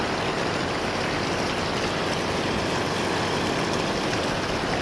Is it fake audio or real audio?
real